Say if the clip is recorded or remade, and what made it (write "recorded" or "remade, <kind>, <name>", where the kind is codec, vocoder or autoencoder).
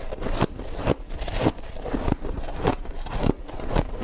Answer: recorded